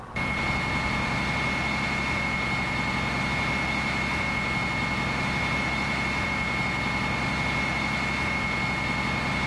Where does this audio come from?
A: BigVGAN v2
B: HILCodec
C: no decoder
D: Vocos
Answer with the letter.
C